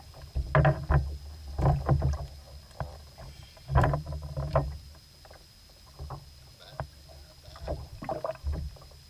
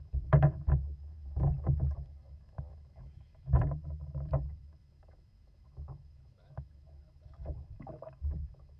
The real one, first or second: first